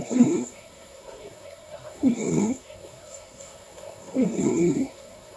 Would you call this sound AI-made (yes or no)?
yes